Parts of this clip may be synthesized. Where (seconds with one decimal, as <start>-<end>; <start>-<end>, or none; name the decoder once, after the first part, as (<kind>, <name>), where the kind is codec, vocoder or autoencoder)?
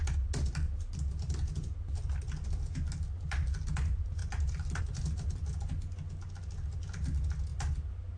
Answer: 4.2-4.8 (vocoder, BigVGAN v2)